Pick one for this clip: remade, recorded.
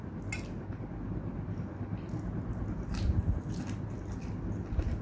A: recorded